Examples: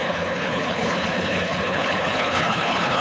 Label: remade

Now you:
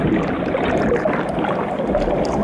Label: recorded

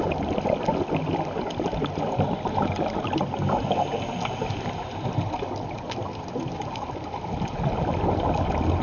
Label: recorded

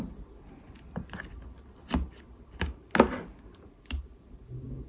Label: recorded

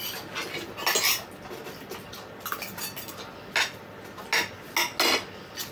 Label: recorded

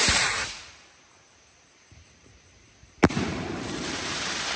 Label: remade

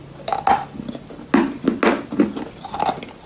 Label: recorded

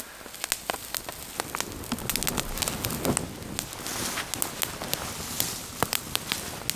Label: recorded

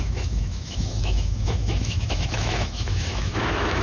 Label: remade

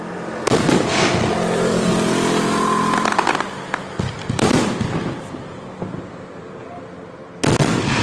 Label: recorded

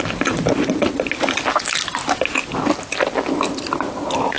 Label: recorded